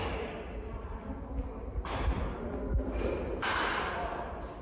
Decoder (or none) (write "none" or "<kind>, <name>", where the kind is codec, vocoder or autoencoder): none